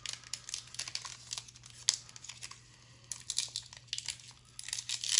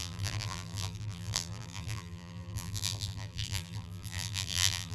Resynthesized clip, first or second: second